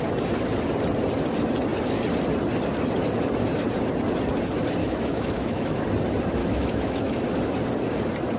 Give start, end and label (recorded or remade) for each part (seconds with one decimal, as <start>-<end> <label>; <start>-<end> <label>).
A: 0.0-4.8 recorded; 4.8-5.8 remade; 5.8-6.4 recorded; 6.4-7.2 remade; 7.2-8.4 recorded